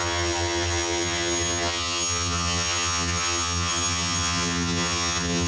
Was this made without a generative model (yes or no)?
no